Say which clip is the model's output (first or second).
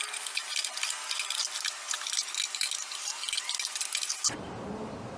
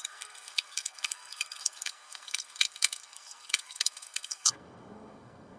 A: second